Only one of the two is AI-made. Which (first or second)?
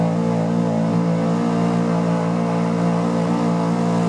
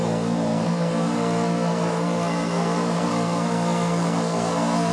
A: second